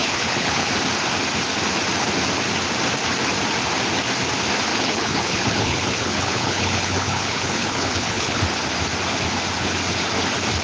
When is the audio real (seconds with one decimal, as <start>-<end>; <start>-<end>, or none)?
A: 0.7-4.7; 8.4-10.6